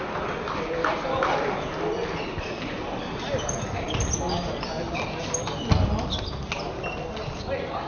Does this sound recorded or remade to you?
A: recorded